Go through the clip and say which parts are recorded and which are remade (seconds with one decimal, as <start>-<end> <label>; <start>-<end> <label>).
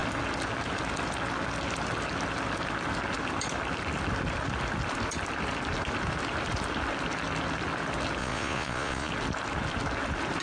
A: 0.0-8.2 recorded; 8.2-9.1 remade; 9.1-10.4 recorded